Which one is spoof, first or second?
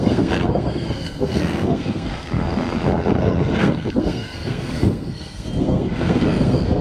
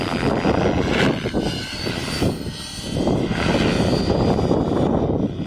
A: first